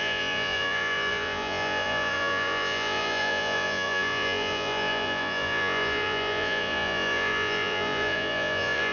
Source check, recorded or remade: remade